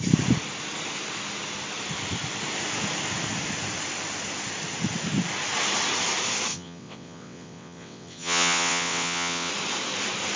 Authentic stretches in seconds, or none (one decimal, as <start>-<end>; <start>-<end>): 0.0-6.5; 9.5-10.4